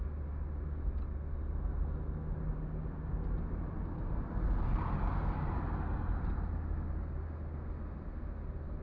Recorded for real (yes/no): yes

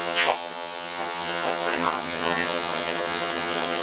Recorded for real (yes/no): no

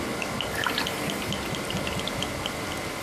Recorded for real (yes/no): yes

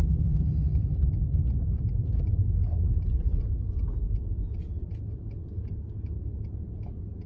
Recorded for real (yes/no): yes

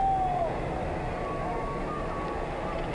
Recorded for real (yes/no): yes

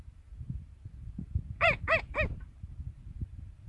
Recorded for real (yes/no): no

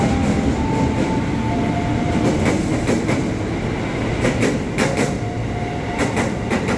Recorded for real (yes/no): yes